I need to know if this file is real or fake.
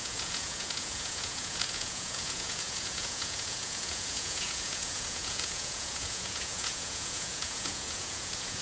fake